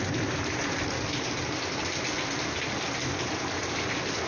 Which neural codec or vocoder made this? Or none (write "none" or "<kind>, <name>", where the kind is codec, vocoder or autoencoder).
none